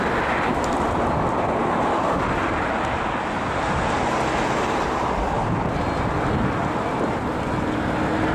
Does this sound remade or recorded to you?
recorded